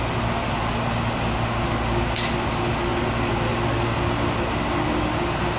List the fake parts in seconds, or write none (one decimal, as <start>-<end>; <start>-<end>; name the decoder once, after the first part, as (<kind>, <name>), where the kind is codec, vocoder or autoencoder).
none